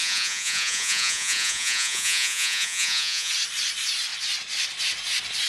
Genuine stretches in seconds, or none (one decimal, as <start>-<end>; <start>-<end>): 3.3-5.5